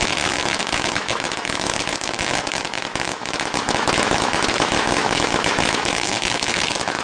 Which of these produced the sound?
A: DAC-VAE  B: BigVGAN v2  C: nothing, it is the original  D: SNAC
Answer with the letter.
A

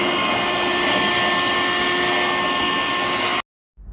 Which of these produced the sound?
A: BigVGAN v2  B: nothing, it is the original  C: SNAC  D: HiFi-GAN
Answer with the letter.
B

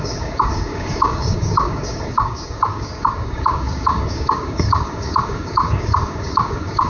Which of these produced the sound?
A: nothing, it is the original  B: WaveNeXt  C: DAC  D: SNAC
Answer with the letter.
C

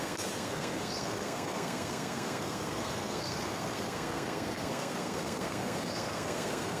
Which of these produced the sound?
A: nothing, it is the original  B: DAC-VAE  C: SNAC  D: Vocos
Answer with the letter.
C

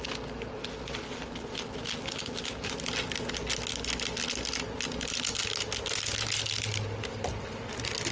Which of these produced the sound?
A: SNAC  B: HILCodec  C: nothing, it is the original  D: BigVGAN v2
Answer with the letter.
C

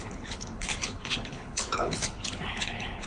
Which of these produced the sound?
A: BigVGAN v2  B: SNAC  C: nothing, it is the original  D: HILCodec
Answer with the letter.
D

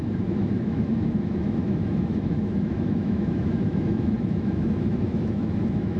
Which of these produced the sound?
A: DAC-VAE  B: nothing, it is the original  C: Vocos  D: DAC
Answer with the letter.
A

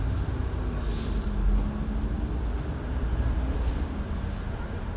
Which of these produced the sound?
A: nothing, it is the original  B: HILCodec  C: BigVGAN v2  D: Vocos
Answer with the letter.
A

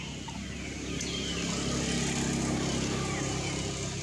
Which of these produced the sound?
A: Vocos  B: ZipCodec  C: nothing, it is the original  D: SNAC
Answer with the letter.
C